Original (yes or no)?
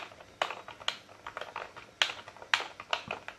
yes